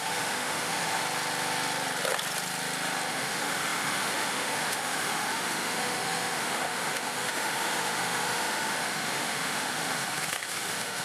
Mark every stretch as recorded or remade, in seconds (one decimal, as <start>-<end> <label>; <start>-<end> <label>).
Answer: 0.0-1.0 remade; 1.0-3.1 recorded; 3.1-11.0 remade